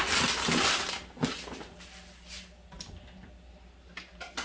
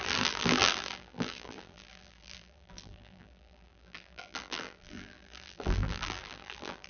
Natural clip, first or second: first